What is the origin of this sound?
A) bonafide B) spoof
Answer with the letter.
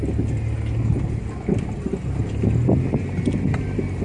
A